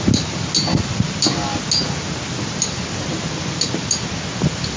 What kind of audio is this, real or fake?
real